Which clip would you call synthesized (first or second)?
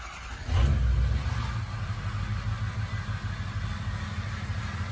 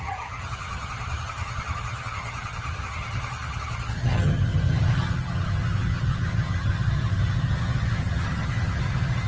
second